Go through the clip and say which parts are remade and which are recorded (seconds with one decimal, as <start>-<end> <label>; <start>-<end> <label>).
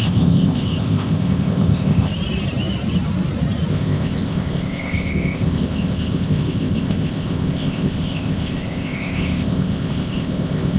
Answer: 0.0-2.1 remade; 2.1-3.7 recorded; 3.7-10.8 remade